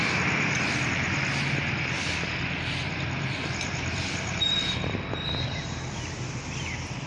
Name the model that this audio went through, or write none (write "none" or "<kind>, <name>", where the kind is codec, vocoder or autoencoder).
none